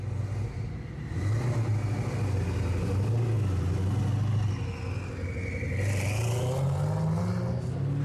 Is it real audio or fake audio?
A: real